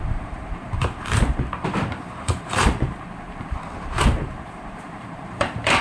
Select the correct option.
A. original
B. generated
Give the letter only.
B